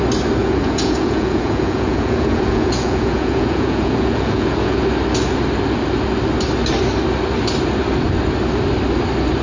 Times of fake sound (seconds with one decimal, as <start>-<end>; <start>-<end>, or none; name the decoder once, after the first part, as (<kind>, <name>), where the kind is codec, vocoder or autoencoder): 0.4-4.8 (vocoder, Vocos)